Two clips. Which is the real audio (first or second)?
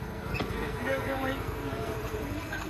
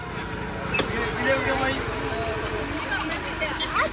second